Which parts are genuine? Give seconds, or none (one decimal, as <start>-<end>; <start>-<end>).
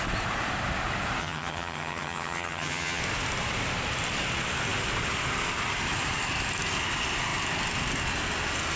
0.0-1.2; 3.0-8.8